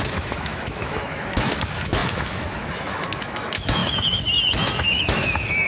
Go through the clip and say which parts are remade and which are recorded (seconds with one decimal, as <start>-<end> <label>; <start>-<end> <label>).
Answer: 0.0-5.7 remade